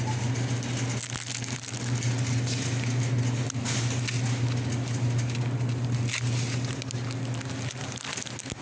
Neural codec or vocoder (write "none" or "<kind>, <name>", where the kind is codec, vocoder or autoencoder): none